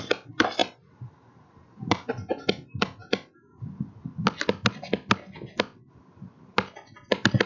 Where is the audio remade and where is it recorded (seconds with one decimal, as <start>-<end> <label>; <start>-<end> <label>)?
0.0-0.6 recorded; 0.6-2.1 remade; 2.1-7.5 recorded